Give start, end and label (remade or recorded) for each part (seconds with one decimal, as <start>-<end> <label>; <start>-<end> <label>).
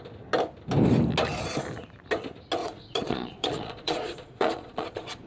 0.0-2.6 recorded; 2.6-5.3 remade